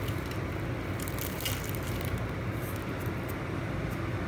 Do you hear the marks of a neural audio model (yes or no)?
no